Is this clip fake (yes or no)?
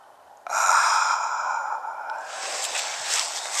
no